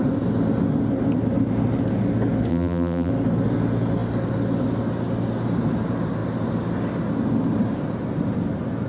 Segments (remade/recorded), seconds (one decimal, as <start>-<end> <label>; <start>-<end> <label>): 0.0-2.5 recorded; 2.5-3.1 remade; 3.1-8.9 recorded